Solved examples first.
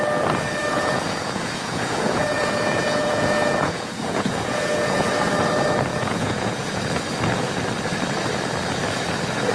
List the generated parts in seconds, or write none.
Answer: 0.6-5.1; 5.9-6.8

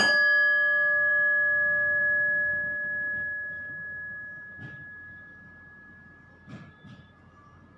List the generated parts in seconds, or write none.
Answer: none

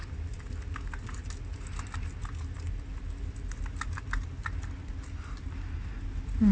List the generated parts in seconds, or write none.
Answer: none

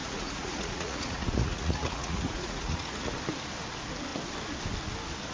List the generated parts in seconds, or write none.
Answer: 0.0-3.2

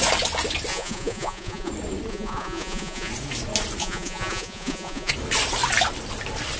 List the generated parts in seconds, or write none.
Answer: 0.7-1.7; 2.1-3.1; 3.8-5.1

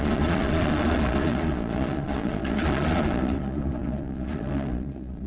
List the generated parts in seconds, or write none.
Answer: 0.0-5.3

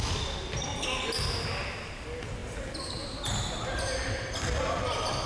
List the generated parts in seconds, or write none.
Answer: none